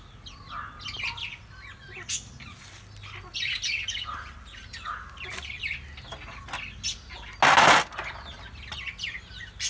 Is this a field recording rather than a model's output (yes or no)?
yes